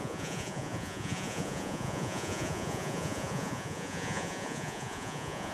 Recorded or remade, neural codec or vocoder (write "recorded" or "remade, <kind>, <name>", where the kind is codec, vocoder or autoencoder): remade, vocoder, Vocos